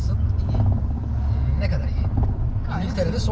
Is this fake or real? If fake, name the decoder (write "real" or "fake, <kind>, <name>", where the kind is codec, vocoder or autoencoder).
real